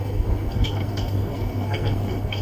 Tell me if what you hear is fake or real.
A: fake